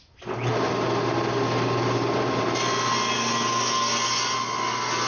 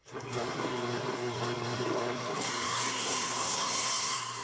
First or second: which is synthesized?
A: second